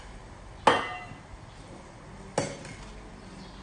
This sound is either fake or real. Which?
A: real